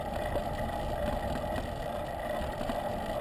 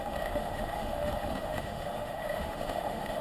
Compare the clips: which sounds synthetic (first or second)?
second